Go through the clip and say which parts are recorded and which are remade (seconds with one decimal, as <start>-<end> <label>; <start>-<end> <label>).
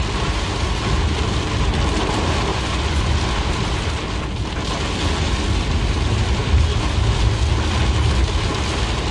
0.0-2.5 recorded; 2.5-3.2 remade; 3.2-9.1 recorded